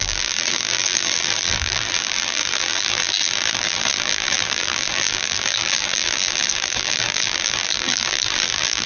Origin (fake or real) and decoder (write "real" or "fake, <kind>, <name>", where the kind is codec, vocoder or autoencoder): fake, vocoder, BigVGAN v2